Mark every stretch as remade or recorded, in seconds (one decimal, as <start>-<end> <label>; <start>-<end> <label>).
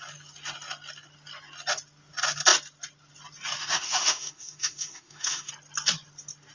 0.0-3.6 recorded; 3.6-5.5 remade; 5.5-6.5 recorded